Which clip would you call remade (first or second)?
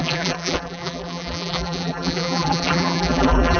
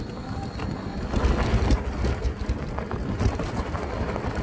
first